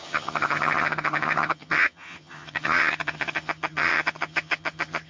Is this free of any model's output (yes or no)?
no